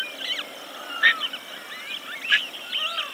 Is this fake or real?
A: real